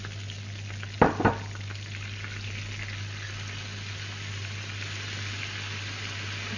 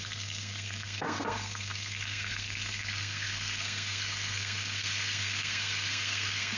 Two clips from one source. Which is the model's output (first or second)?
second